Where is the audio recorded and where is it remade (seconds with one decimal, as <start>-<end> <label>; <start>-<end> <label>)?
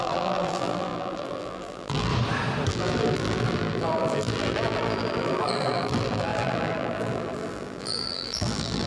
0.0-2.1 remade; 2.1-2.7 recorded; 2.7-8.9 remade